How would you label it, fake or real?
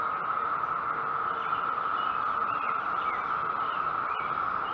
real